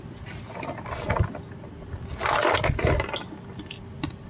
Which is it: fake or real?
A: real